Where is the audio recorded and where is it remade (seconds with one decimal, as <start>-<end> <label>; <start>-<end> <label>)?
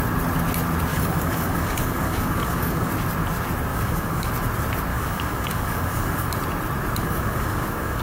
0.0-0.9 recorded; 0.9-2.9 remade; 2.9-3.7 recorded; 3.7-4.3 remade; 4.3-4.9 recorded; 4.9-6.3 remade; 6.3-7.0 recorded; 7.0-8.0 remade